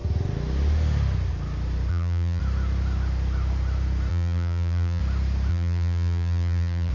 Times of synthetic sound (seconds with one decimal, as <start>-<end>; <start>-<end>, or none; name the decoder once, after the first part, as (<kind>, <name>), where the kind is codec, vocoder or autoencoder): 1.9-2.4 (vocoder, BigVGAN v2); 4.1-5.0; 5.5-6.9